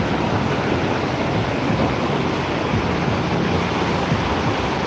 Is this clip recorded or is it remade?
recorded